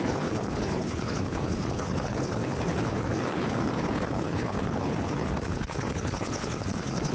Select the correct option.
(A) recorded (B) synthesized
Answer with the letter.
B